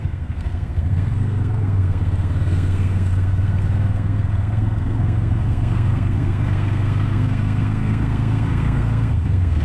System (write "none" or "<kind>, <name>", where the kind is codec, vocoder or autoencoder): codec, SNAC